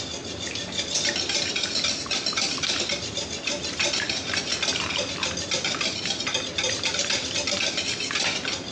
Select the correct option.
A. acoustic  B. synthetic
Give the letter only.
A